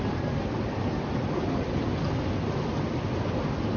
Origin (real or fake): real